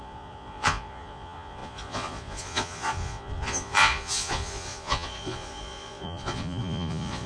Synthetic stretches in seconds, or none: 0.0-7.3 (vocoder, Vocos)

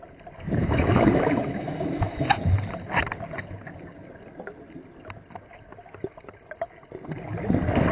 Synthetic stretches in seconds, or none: 0.6-2.3 (autoencoder, DAC-VAE)

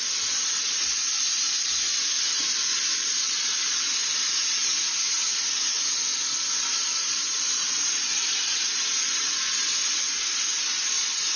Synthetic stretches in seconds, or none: 4.0-4.7 (vocoder, BigVGAN v2); 6.7-9.5

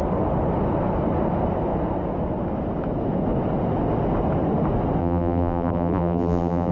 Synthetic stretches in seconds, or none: 5.0-6.7 (vocoder, BigVGAN v2)

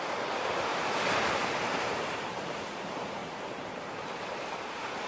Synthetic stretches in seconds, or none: 0.0-5.1 (vocoder, BigVGAN v2)